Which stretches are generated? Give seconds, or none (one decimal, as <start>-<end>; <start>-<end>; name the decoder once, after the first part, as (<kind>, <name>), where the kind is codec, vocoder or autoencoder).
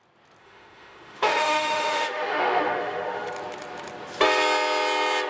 0.4-3.3 (autoencoder, DAC-VAE)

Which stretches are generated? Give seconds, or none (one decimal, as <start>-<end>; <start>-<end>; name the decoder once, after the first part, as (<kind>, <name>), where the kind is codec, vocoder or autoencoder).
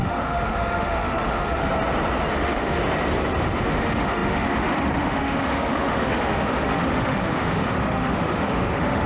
0.0-1.6 (autoencoder, DAC-VAE); 2.3-2.8; 3.6-9.1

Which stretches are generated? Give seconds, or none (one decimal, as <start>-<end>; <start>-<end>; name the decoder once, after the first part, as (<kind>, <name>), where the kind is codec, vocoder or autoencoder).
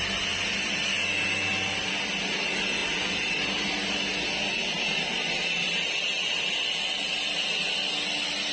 none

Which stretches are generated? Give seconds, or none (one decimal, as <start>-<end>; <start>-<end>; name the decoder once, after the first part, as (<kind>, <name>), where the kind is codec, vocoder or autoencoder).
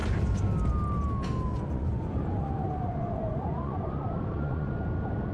1.5-4.7 (vocoder, Vocos)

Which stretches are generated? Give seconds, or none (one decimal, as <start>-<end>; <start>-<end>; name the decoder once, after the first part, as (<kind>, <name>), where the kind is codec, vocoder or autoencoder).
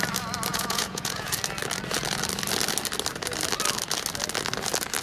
0.5-1.3 (vocoder, Vocos)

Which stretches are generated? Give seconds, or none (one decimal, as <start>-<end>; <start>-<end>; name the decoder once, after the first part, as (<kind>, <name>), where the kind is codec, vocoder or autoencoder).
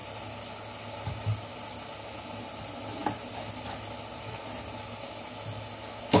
none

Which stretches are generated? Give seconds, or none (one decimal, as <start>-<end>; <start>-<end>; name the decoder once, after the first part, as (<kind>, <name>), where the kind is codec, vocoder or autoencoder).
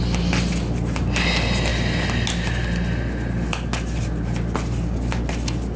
none